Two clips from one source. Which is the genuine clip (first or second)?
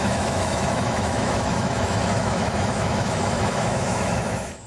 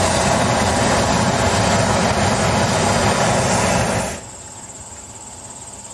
second